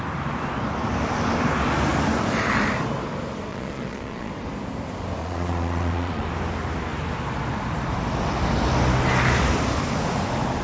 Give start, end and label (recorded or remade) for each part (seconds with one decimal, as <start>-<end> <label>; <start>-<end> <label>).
0.0-3.5 recorded; 3.5-4.3 remade; 4.3-5.2 recorded; 5.2-6.3 remade; 6.3-10.6 recorded